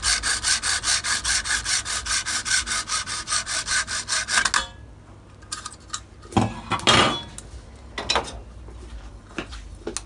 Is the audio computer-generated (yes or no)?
no